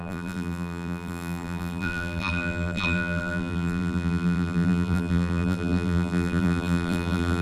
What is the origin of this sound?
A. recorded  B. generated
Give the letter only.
B